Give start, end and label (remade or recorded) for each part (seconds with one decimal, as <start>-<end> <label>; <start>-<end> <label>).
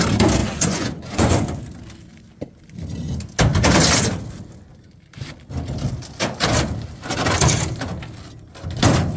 0.0-0.4 recorded; 0.4-1.6 remade; 1.6-9.2 recorded